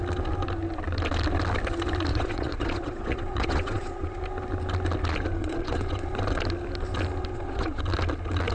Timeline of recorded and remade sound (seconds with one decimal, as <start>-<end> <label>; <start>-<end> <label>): 0.0-2.1 recorded; 2.1-4.2 remade; 4.2-5.4 recorded; 5.4-6.1 remade; 6.1-7.3 recorded; 7.3-7.8 remade; 7.8-8.5 recorded